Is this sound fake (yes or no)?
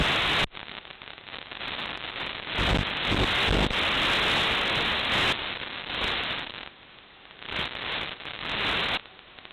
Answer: no